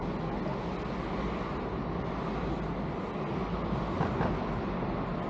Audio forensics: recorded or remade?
recorded